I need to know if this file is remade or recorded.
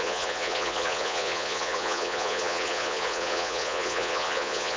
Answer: remade